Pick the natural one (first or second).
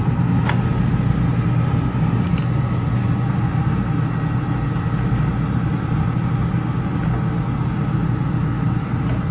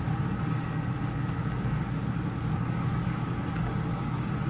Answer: first